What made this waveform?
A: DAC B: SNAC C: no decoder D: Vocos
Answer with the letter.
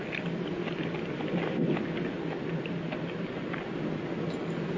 C